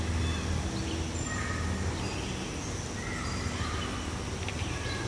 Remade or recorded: recorded